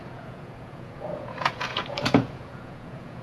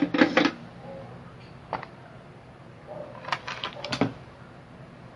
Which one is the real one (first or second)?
second